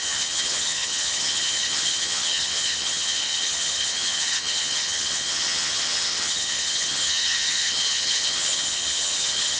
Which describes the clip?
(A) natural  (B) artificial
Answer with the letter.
B